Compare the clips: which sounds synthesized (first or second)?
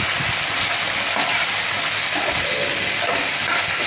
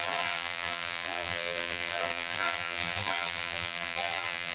second